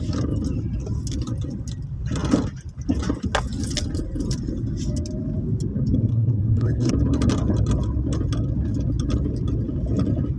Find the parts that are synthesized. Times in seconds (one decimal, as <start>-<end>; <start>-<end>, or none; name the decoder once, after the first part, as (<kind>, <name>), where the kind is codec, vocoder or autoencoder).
6.1-6.9 (codec, SNAC)